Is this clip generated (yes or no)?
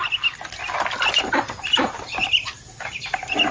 no